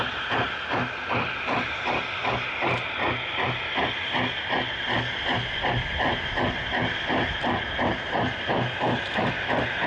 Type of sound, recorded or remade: recorded